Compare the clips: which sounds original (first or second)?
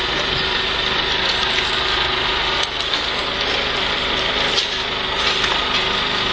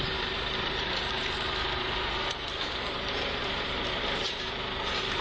first